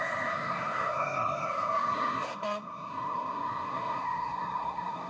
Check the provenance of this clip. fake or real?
fake